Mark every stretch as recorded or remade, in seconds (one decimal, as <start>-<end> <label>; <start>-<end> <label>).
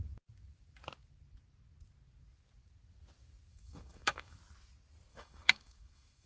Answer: 0.0-3.5 recorded; 3.5-4.4 remade; 4.4-5.1 recorded; 5.1-6.3 remade